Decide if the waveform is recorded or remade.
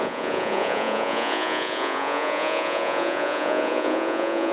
remade